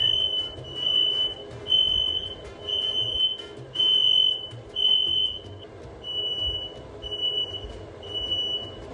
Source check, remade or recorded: recorded